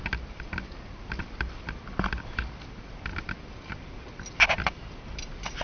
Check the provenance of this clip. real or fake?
real